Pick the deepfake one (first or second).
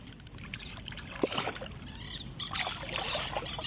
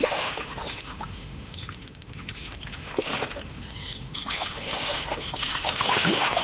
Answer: second